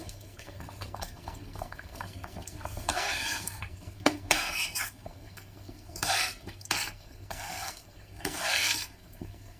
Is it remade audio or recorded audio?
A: remade